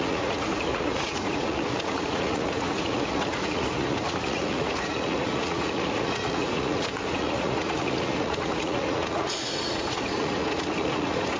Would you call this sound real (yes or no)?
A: no